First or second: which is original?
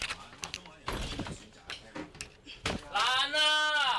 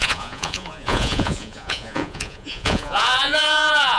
first